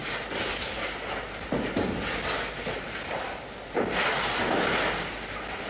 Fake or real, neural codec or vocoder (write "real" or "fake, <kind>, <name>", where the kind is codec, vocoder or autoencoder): real